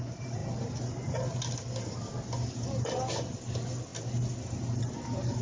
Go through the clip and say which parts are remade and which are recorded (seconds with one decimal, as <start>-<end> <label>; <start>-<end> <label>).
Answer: 0.0-5.4 recorded